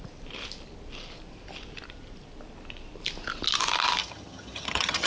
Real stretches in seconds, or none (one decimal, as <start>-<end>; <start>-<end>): 0.0-4.0